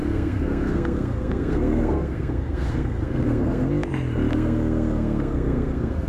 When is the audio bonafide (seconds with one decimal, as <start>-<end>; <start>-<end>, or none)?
3.7-4.3